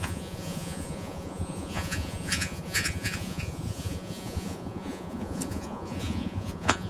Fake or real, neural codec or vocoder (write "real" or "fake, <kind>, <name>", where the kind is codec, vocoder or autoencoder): fake, vocoder, Vocos